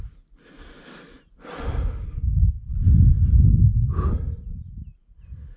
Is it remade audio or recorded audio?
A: recorded